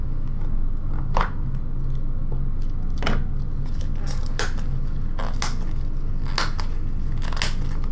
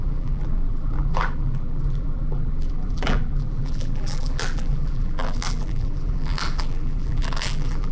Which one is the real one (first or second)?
first